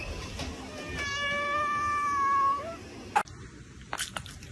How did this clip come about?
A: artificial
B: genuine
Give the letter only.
B